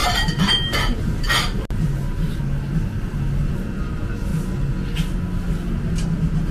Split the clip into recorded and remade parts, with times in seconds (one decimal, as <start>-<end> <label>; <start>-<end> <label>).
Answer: 0.0-1.2 remade; 1.2-6.5 recorded